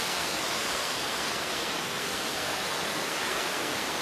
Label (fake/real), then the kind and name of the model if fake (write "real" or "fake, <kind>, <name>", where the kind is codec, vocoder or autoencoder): fake, codec, SNAC